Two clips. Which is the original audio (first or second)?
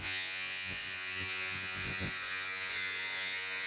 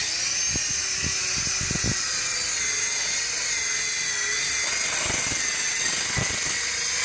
second